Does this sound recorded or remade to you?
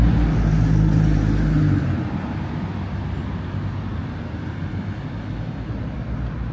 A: recorded